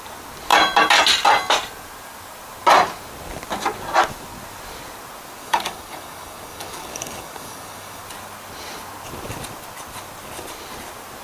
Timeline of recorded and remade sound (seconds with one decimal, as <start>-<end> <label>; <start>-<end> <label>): 0.0-5.4 recorded; 5.4-8.0 remade; 8.0-11.2 recorded